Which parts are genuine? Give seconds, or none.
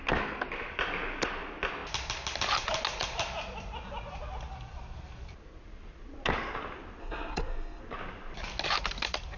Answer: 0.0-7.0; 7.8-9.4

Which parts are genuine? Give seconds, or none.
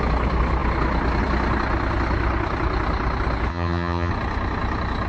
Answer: 0.0-3.5; 4.1-5.1